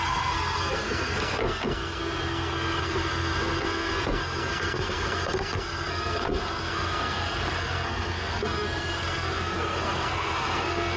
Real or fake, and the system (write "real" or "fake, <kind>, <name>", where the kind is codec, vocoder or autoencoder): fake, codec, SNAC